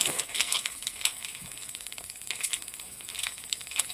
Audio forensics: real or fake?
fake